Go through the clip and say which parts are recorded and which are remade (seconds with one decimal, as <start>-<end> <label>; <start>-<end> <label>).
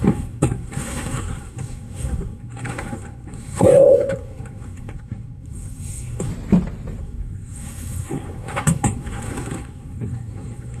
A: 0.0-6.3 remade; 6.3-7.0 recorded; 7.0-10.8 remade